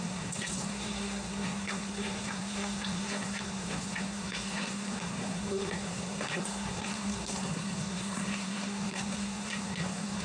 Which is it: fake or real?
fake